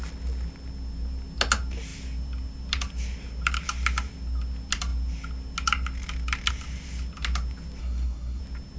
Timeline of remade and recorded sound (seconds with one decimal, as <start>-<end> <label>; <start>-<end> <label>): 0.0-7.8 recorded; 7.8-8.4 remade; 8.4-8.8 recorded